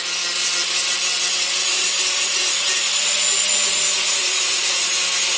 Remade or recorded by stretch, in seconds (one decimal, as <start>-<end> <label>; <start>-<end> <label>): 0.0-1.7 recorded; 1.7-4.9 remade; 4.9-5.4 recorded